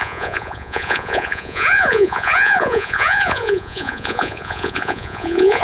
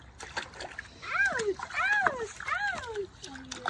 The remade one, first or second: first